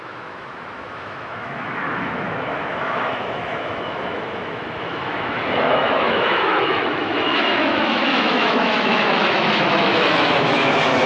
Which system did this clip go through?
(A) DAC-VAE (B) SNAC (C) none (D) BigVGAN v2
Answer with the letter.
A